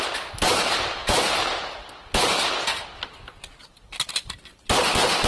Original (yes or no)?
yes